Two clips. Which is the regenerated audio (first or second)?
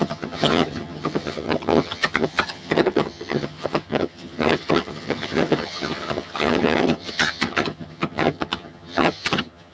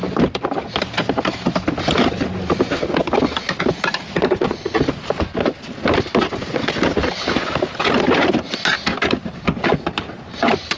first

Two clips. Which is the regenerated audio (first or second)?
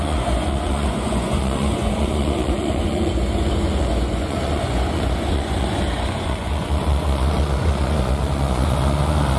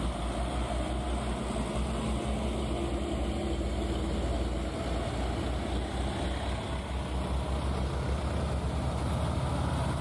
first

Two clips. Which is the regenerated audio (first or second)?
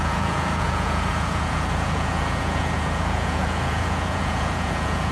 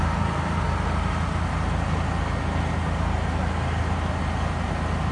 first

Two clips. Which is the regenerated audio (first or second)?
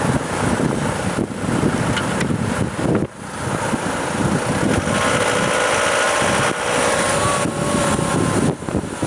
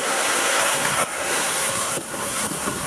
second